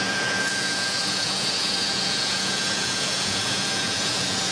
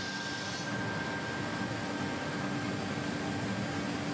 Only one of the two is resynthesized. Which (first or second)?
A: first